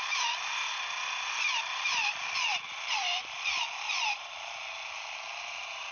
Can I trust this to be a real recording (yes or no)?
no